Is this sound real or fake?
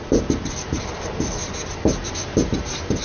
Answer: real